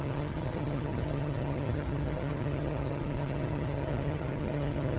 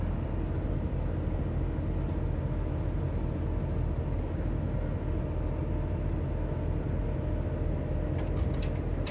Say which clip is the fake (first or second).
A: first